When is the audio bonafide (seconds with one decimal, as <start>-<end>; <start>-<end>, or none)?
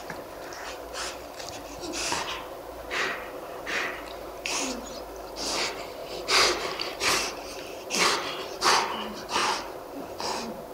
0.0-6.0; 8.7-9.4; 10.1-10.7